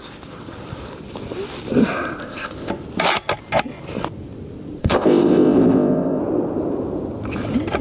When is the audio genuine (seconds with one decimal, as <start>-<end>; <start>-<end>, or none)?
0.0-2.2; 2.7-4.8; 6.2-7.8